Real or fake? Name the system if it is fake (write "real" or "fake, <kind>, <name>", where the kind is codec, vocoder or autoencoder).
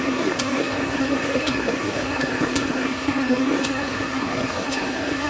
fake, codec, SNAC